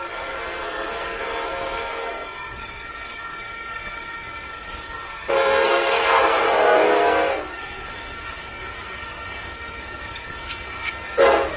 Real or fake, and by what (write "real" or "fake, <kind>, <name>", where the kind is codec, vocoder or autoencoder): fake, codec, SNAC